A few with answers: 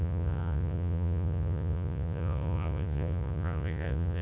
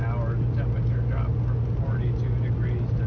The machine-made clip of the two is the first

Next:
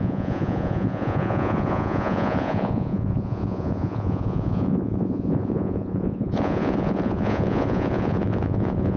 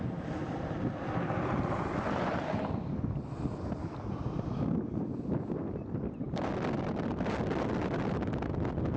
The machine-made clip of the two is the first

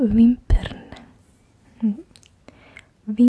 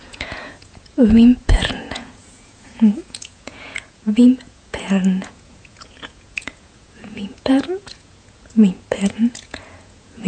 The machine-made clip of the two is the second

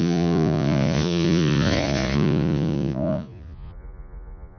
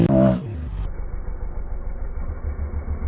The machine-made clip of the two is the first